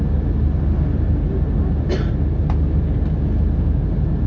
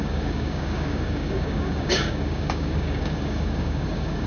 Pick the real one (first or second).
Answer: first